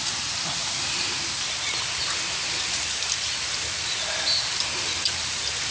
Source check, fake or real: real